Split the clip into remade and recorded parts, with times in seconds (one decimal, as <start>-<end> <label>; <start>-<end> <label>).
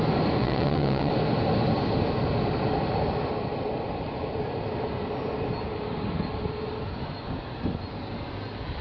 0.0-0.4 recorded; 0.4-1.1 remade; 1.1-8.8 recorded